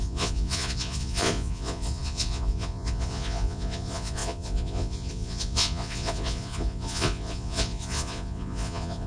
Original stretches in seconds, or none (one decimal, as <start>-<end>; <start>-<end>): none